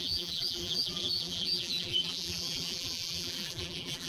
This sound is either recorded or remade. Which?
remade